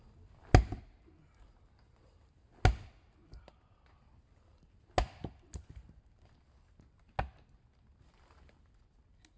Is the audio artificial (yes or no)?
no